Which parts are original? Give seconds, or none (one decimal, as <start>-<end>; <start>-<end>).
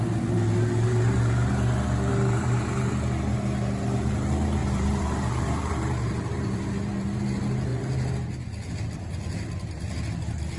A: 0.0-2.1; 2.9-4.6; 6.7-10.6